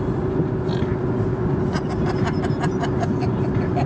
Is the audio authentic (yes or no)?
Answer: yes